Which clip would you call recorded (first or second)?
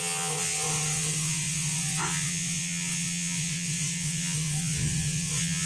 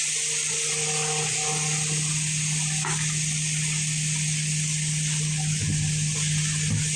second